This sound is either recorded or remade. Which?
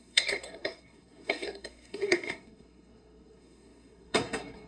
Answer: remade